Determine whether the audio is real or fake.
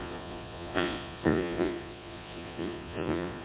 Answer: fake